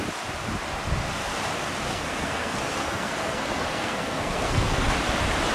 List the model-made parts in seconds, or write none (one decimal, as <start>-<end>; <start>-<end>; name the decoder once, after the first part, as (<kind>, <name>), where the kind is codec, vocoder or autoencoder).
1.9-4.9 (codec, SNAC)